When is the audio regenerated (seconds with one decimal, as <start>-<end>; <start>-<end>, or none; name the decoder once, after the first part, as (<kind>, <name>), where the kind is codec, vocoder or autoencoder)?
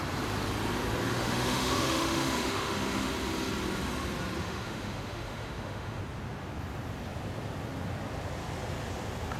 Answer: 1.1-3.1 (autoencoder, DAC-VAE); 4.4-6.0